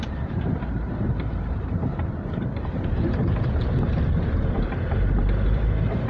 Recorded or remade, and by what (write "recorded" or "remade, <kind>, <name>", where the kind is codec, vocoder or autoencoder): remade, vocoder, BigVGAN v2